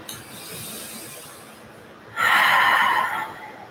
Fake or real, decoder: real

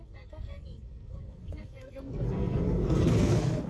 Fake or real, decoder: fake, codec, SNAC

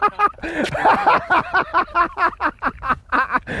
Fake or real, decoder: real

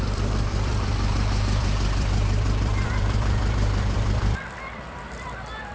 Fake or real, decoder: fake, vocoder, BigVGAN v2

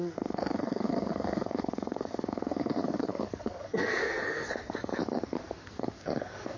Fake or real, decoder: fake, codec, SNAC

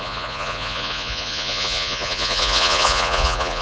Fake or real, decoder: fake, vocoder, Vocos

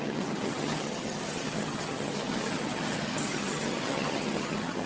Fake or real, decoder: fake, vocoder, HiFi-GAN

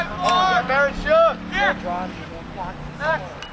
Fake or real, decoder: real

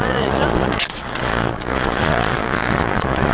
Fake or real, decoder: fake, vocoder, Vocos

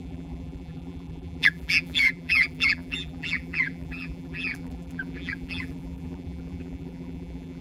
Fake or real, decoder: fake, vocoder, BigVGAN v2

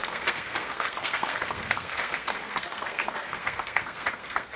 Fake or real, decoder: fake, codec, SNAC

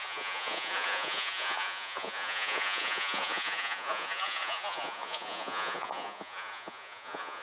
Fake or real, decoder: fake, vocoder, Vocos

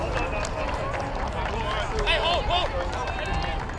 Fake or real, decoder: real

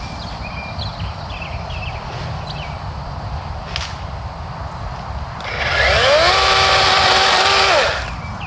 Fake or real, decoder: real